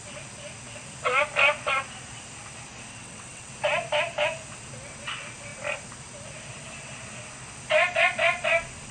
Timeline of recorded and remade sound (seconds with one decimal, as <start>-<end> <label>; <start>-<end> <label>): 0.0-2.9 recorded; 2.9-3.5 remade; 3.5-8.9 recorded